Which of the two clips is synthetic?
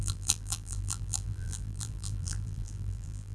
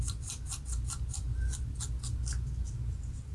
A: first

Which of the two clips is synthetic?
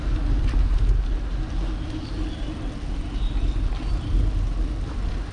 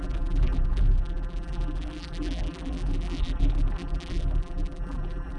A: second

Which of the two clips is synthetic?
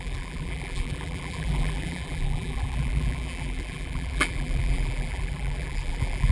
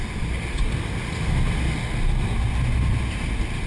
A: first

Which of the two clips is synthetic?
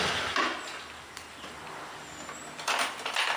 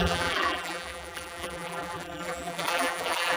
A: second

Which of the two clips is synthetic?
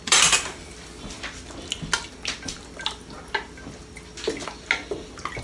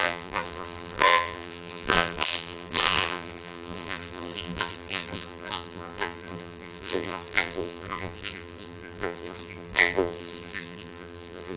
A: second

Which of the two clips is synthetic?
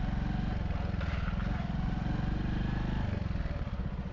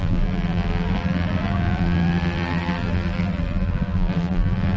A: second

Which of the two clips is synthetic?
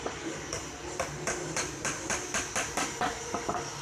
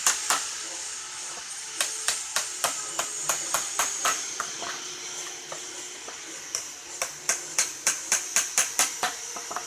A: second